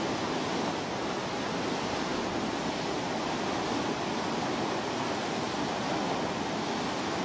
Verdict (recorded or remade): recorded